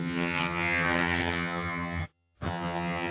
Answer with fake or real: fake